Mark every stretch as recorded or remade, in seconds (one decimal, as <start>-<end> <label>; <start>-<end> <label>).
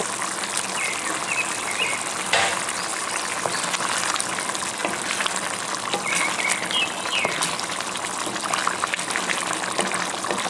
0.0-10.5 recorded